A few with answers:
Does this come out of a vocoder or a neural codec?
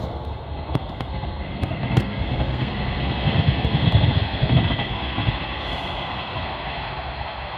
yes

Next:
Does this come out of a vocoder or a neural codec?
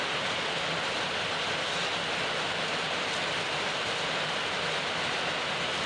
no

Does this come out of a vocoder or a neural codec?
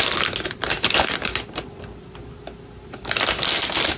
no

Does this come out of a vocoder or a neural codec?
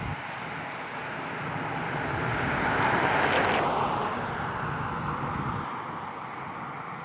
no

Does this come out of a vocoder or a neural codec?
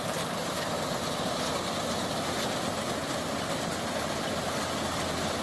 no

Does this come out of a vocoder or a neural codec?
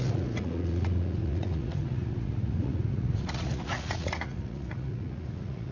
yes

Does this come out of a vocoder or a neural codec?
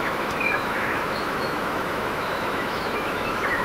yes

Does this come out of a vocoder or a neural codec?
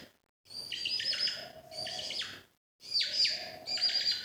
no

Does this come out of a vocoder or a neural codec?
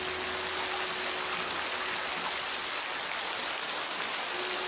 no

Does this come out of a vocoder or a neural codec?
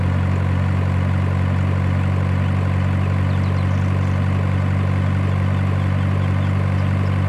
no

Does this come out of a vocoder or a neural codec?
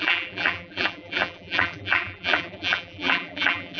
yes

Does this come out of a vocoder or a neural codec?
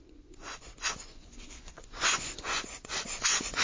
yes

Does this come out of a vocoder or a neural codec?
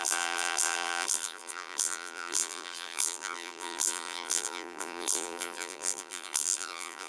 yes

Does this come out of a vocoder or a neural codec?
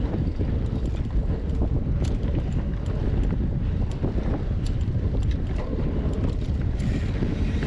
yes